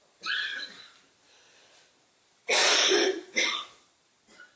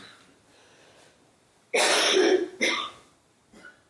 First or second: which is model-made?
first